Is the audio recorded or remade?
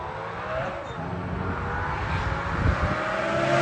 recorded